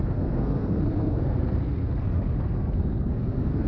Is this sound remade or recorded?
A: remade